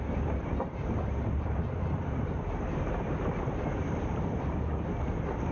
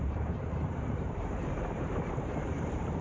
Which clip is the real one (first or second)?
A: first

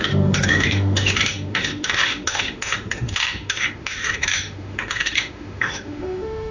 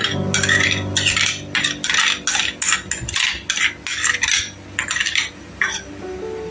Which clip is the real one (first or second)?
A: second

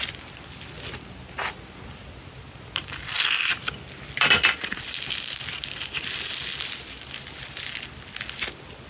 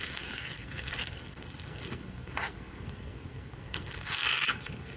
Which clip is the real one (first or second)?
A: first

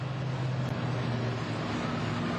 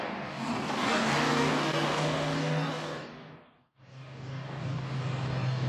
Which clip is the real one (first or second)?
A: first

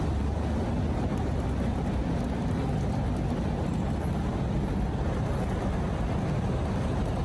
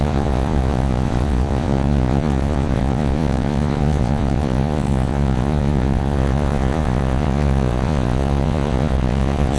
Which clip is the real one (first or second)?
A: first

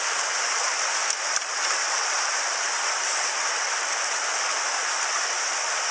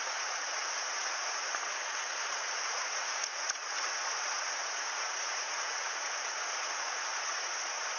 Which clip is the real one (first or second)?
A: first